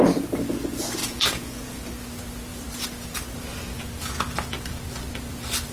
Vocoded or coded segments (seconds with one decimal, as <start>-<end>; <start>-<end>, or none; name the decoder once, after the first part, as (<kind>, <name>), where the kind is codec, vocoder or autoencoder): 1.0-1.8 (vocoder, Vocos)